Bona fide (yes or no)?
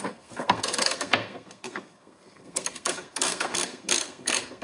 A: no